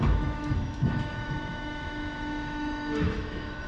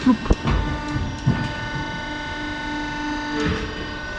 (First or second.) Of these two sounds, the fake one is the first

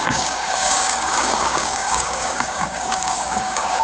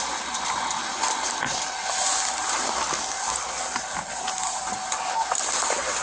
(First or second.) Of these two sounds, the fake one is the first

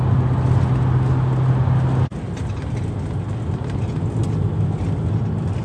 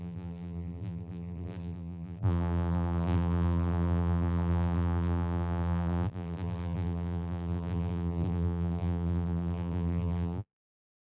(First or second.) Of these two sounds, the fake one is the second